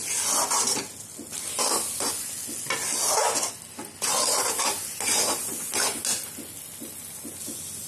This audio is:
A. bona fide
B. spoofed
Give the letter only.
A